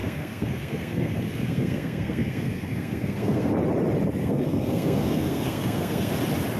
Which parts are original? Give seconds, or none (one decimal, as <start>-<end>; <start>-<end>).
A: 3.5-4.2; 6.1-6.6

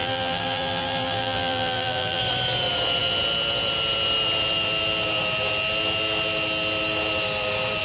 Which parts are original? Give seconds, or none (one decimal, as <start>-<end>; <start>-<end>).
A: 2.2-7.8

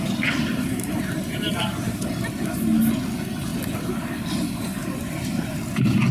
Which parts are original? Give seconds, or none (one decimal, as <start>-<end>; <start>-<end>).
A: 0.0-0.5; 2.0-4.8